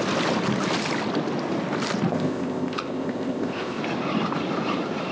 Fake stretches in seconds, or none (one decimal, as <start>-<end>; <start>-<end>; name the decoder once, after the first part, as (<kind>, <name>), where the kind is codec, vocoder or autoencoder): 2.1-3.8 (codec, ZipCodec)